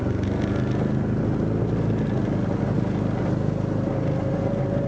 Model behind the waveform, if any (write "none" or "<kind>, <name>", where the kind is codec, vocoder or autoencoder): none